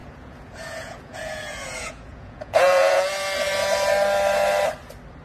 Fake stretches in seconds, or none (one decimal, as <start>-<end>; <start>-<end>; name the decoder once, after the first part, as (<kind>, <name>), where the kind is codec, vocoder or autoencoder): 0.0-3.1 (vocoder, Vocos)